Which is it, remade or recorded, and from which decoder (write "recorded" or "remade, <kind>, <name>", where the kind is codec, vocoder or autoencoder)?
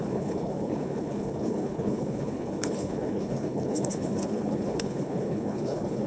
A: remade, codec, HILCodec